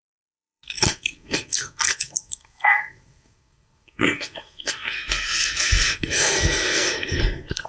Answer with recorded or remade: remade